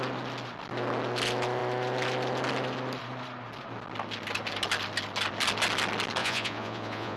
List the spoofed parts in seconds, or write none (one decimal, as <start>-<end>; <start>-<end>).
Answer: 6.2-7.2